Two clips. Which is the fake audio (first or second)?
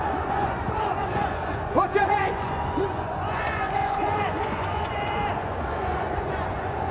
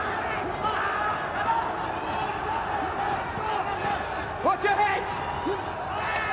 first